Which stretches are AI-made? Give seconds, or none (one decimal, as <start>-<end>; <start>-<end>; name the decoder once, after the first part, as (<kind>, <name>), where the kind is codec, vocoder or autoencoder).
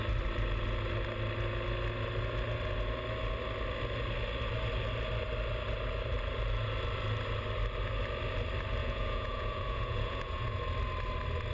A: 8.8-10.6 (vocoder, Vocos)